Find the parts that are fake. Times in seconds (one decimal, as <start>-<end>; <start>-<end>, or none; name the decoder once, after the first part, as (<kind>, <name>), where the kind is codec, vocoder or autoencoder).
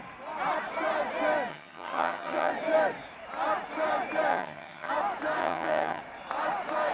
1.5-2.5 (vocoder, HiFi-GAN); 4.3-4.9; 5.4-6.0